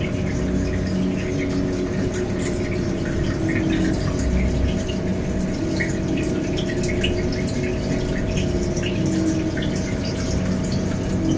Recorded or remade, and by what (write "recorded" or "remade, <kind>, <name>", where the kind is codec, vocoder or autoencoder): recorded